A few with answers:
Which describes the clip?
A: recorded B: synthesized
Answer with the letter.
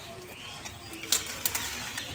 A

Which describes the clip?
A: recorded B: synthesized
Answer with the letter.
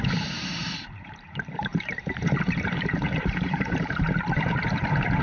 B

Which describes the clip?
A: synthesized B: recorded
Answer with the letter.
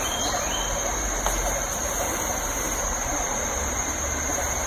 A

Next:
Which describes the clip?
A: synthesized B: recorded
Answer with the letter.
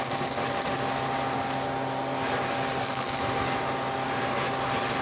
B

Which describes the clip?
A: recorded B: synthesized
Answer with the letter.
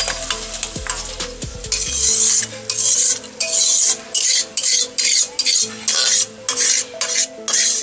A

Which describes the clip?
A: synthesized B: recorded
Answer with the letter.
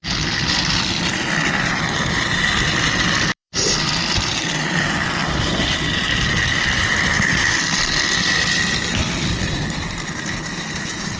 A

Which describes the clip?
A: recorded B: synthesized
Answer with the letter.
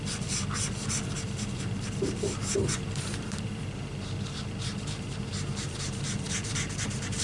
B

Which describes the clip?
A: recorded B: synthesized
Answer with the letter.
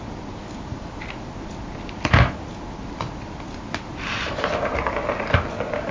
A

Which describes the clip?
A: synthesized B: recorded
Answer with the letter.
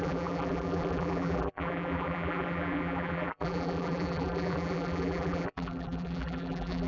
A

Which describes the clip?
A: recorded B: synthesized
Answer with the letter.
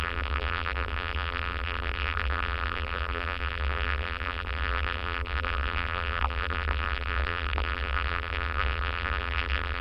B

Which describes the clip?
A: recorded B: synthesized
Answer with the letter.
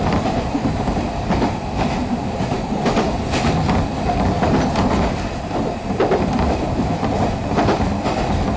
B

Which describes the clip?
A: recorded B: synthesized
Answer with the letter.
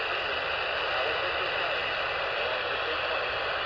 A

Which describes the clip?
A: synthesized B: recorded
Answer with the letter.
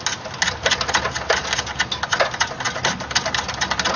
B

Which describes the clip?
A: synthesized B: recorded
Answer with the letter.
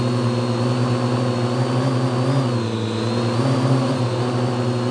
B